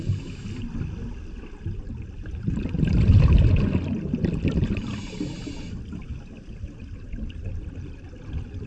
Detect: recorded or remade recorded